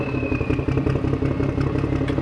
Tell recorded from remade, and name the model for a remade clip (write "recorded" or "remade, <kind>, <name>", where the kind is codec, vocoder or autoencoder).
recorded